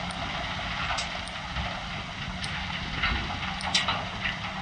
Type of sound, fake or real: real